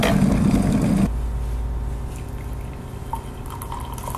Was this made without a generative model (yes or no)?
yes